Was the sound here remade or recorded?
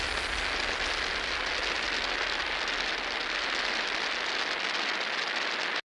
recorded